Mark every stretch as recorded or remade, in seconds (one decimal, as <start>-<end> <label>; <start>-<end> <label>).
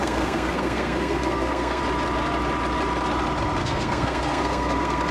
0.0-1.8 remade; 1.8-3.6 recorded; 3.6-5.1 remade